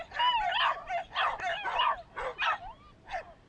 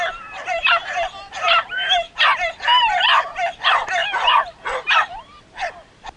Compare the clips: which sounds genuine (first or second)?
first